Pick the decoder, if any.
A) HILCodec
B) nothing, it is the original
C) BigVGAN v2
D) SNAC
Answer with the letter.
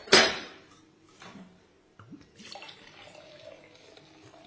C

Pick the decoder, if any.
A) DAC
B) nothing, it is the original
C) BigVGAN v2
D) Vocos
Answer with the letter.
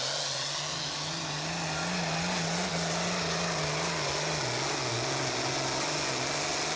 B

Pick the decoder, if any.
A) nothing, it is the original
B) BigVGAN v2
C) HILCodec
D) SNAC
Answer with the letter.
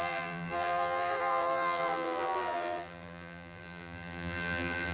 B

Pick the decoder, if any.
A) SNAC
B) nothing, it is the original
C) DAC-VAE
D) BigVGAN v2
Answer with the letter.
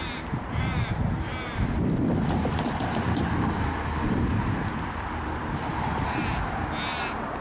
D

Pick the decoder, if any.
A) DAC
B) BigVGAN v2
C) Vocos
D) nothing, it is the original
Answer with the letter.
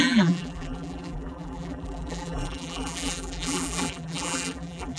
B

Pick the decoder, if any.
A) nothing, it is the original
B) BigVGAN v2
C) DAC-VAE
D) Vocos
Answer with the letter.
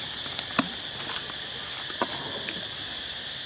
A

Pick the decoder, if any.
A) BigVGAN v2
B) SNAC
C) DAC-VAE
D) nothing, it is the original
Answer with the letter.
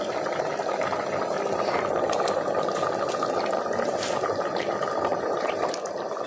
D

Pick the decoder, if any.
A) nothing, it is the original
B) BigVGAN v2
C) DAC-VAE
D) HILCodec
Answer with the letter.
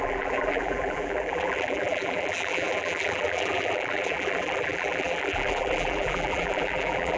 B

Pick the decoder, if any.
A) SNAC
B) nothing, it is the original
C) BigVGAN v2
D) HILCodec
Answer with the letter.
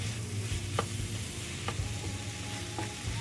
B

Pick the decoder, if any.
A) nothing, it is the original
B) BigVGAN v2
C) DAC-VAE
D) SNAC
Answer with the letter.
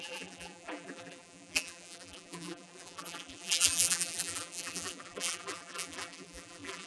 B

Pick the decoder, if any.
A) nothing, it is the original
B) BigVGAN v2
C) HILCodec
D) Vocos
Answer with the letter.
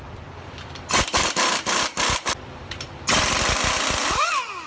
B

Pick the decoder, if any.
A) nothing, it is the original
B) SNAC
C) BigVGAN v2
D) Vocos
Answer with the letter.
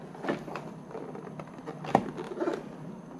A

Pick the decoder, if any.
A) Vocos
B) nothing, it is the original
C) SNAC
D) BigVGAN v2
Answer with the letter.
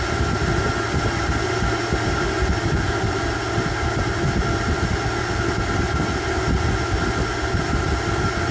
B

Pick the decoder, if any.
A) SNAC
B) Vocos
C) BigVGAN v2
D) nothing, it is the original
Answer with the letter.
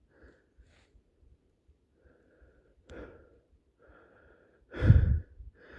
C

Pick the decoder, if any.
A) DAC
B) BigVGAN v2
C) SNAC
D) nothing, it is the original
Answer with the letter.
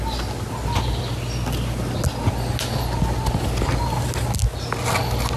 D